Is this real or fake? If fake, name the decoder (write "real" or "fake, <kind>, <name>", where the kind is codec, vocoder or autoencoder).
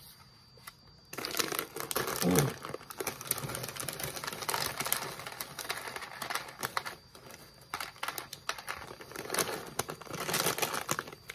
real